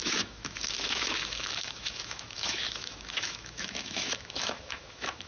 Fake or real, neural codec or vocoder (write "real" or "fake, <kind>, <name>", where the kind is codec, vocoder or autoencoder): fake, autoencoder, DAC-VAE